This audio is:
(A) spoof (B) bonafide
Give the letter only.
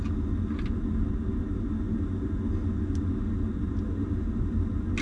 B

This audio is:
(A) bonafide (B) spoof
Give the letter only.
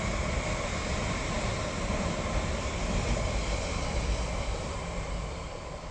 A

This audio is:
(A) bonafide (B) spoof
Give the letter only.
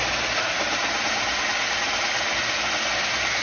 A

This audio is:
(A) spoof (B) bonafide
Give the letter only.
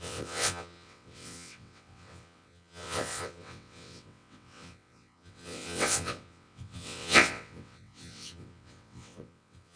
A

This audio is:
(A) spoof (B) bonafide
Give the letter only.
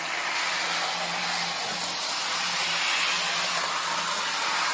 B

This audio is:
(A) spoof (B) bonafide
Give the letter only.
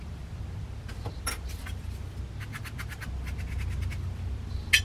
B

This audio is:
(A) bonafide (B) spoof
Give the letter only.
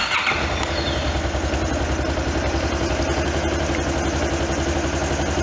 A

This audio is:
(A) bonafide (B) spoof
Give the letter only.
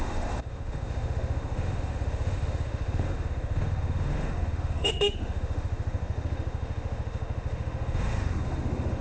B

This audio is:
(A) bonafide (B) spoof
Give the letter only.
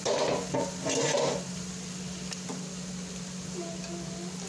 A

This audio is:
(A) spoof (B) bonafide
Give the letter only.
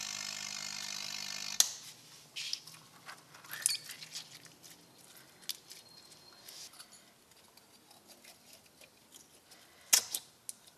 B